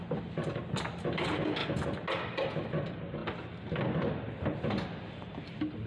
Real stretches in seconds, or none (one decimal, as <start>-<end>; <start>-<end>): 1.6-2.5; 3.2-4.2